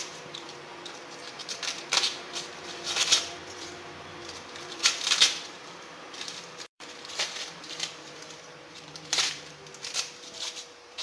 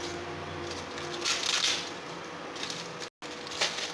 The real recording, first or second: second